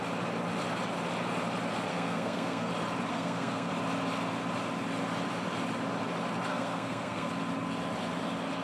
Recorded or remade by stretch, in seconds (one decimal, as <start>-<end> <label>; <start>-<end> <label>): 0.0-1.9 recorded; 1.9-2.7 remade; 2.7-3.1 recorded; 3.1-3.7 remade; 3.7-6.5 recorded; 6.5-7.3 remade; 7.3-8.6 recorded